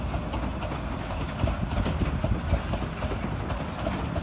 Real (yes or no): yes